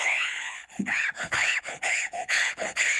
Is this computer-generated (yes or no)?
yes